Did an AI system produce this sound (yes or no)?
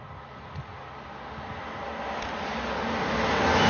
no